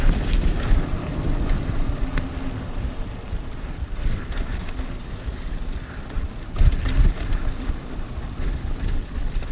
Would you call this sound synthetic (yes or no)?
no